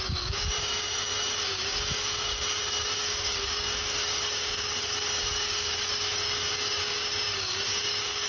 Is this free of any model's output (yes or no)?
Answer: no